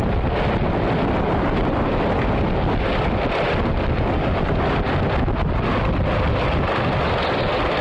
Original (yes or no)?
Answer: yes